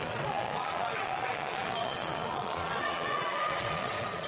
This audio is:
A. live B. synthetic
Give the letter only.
B